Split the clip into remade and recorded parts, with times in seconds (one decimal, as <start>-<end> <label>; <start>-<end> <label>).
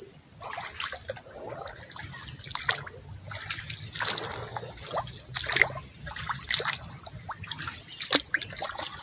0.0-9.0 recorded